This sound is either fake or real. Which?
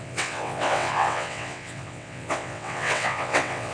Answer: fake